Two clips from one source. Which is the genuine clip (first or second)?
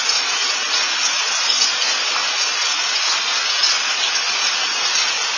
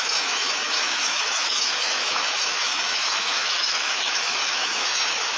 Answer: first